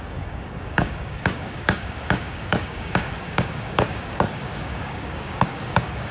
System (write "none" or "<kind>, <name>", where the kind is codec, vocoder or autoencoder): codec, DAC